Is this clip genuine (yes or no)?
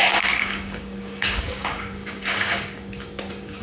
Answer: no